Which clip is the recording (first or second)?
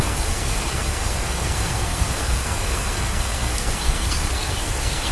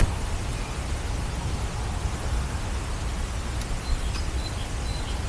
second